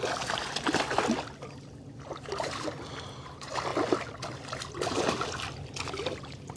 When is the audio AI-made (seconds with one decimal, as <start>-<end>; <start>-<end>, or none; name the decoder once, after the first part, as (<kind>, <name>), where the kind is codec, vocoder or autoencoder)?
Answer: none